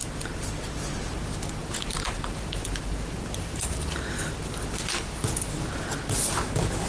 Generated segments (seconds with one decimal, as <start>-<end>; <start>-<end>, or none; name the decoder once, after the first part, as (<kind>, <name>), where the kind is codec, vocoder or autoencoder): 0.0-0.9 (vocoder, BigVGAN v2); 1.6-5.7